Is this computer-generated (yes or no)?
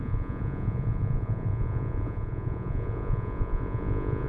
yes